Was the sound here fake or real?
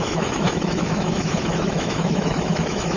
fake